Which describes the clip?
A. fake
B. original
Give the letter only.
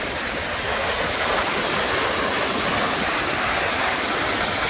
B